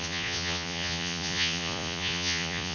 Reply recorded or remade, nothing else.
remade